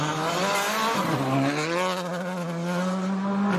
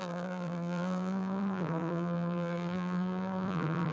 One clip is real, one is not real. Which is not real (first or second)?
second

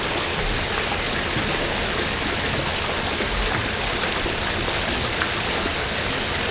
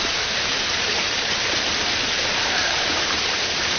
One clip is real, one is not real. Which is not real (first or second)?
second